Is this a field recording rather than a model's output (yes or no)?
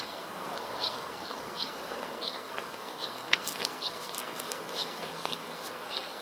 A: no